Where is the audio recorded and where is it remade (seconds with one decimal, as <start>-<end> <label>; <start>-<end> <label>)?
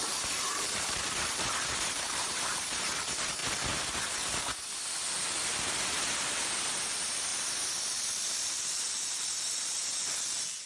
0.0-3.4 remade; 3.4-5.7 recorded; 5.7-10.7 remade